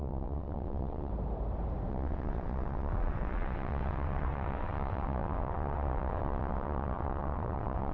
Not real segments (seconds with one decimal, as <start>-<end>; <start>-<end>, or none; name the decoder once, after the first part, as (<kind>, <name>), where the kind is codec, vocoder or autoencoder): 0.0-1.1 (vocoder, WaveNeXt); 1.9-7.9